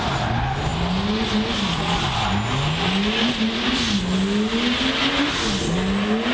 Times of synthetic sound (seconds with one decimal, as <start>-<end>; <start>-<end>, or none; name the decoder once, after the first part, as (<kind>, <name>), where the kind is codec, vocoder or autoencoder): none